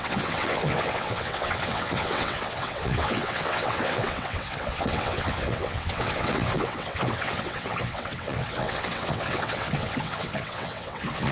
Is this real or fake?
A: fake